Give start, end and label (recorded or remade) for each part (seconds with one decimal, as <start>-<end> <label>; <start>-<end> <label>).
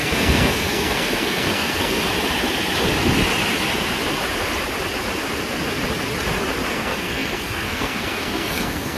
0.0-2.0 remade; 2.0-6.7 recorded; 6.7-9.0 remade